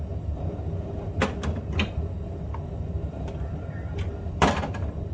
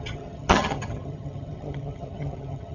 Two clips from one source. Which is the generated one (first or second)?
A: second